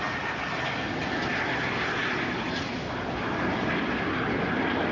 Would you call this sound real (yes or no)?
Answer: yes